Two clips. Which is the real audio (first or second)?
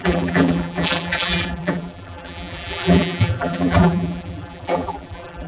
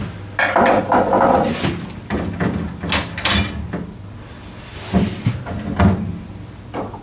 second